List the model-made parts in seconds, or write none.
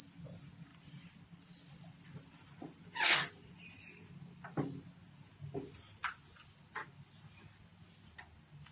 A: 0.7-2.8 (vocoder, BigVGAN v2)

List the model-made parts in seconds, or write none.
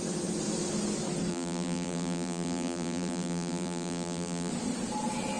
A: 1.3-4.5 (vocoder, BigVGAN v2)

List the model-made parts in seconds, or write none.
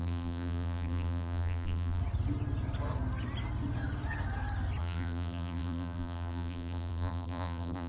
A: 0.0-2.0 (vocoder, BigVGAN v2); 4.8-7.9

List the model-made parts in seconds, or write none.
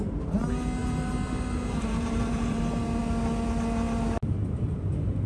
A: 0.8-2.6 (vocoder, BigVGAN v2)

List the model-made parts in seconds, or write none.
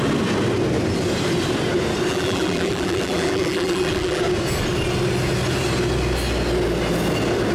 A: 2.1-4.2 (vocoder, BigVGAN v2)